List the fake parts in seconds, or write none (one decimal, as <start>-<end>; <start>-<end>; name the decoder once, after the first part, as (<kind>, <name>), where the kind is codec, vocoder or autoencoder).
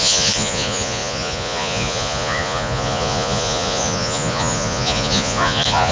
0.0-5.9 (vocoder, Vocos)